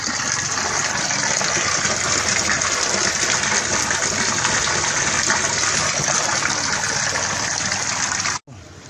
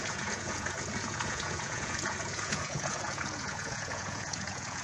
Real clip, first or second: first